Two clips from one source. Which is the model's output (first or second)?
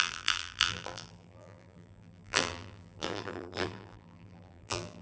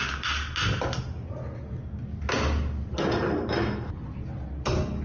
first